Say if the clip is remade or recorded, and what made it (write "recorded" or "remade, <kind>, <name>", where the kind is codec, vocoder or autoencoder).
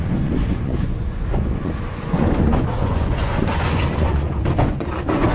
remade, vocoder, Vocos